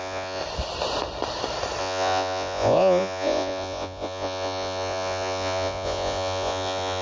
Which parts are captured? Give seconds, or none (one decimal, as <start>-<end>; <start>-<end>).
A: 0.4-1.8